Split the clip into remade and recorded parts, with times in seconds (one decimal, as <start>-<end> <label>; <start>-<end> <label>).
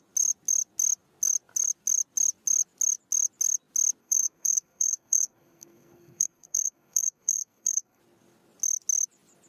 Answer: 0.0-4.0 recorded; 4.0-8.0 remade; 8.0-9.5 recorded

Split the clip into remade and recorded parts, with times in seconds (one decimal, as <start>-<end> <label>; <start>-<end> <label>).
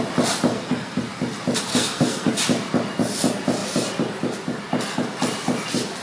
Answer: 0.0-0.5 recorded; 0.5-1.1 remade; 1.1-1.7 recorded; 1.7-2.3 remade; 2.3-6.0 recorded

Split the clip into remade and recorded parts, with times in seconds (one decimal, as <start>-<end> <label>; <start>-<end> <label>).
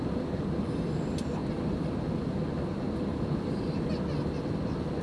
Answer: 0.0-5.0 recorded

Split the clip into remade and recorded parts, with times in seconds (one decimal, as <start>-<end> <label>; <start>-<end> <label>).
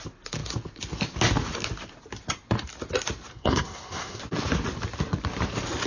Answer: 0.0-3.3 recorded; 3.3-4.2 remade; 4.2-5.9 recorded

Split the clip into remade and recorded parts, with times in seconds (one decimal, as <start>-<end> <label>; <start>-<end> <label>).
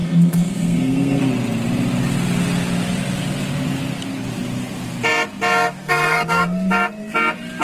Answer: 0.0-1.2 remade; 1.2-5.8 recorded; 5.8-6.7 remade; 6.7-7.6 recorded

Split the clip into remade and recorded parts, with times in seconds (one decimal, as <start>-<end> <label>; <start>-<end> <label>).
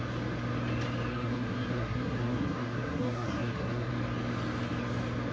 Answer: 0.0-1.1 recorded; 1.1-3.9 remade; 3.9-5.3 recorded